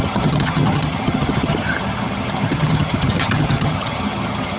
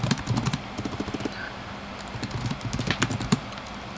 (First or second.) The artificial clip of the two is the first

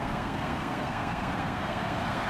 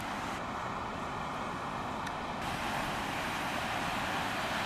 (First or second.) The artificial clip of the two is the first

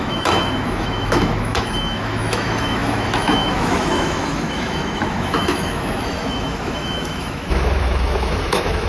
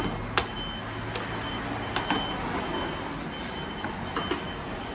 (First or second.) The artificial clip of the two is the first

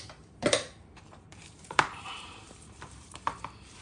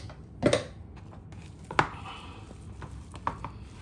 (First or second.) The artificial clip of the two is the first